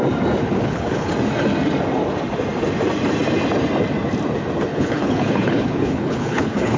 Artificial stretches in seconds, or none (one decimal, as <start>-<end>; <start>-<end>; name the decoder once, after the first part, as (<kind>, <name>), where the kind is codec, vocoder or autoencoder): 0.4-1.1 (codec, HILCodec); 4.7-6.8